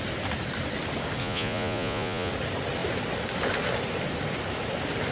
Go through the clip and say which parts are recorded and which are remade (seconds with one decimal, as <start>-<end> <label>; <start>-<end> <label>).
0.0-1.2 recorded; 1.2-2.3 remade; 2.3-5.1 recorded